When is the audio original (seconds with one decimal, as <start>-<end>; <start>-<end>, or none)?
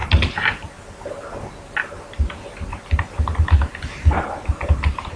0.0-5.2